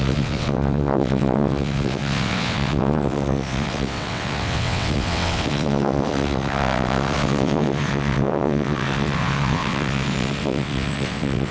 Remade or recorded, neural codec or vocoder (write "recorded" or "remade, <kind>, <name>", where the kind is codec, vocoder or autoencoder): remade, vocoder, WaveNeXt